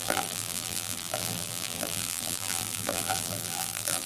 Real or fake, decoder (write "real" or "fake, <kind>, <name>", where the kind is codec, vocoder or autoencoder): fake, vocoder, BigVGAN v2